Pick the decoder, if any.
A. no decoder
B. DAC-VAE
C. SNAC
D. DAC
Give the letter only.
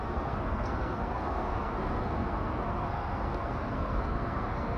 C